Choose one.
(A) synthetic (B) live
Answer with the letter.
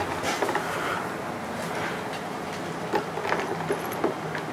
B